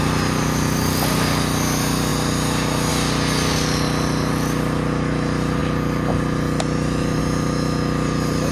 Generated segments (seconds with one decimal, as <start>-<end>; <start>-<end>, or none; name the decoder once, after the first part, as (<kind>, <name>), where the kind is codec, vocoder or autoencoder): none